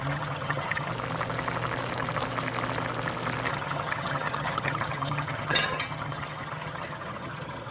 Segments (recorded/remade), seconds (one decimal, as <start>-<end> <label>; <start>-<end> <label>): 0.0-0.9 remade; 0.9-3.5 recorded; 3.5-7.7 remade